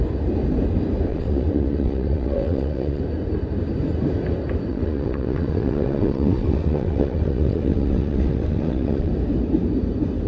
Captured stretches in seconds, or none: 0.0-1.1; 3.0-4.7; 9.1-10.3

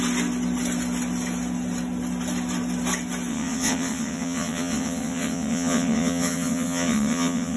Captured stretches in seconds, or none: 0.0-3.3